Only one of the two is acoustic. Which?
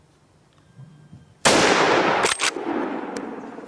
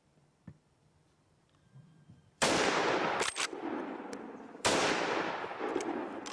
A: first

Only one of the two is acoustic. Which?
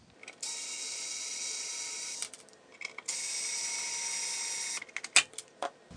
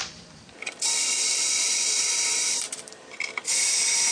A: first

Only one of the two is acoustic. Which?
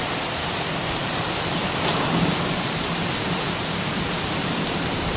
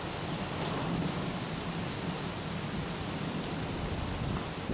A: second